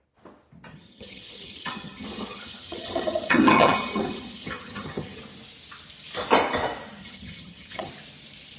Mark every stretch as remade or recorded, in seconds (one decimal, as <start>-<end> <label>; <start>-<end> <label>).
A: 0.0-0.7 recorded; 0.7-5.2 remade; 5.2-7.0 recorded; 7.0-7.9 remade; 7.9-8.6 recorded